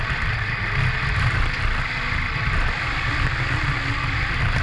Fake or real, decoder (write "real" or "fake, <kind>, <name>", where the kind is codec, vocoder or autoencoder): real